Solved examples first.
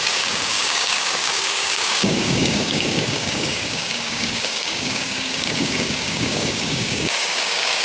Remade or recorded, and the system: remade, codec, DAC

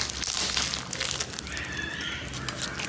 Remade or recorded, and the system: recorded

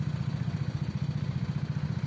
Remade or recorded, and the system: recorded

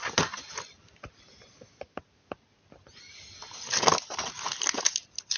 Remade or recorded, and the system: recorded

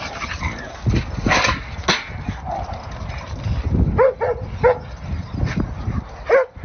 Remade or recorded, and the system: recorded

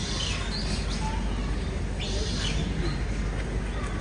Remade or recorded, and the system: recorded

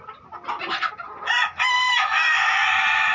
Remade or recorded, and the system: recorded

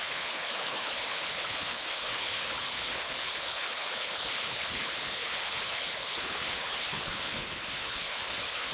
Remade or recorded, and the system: remade, codec, HILCodec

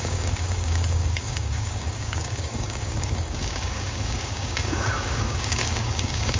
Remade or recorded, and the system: remade, codec, DAC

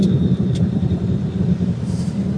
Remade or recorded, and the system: remade, vocoder, BigVGAN v2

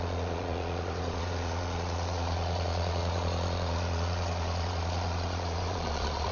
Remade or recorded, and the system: remade, vocoder, Vocos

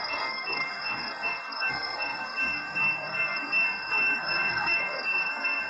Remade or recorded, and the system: remade, codec, SNAC